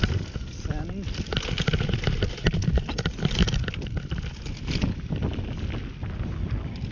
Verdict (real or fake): real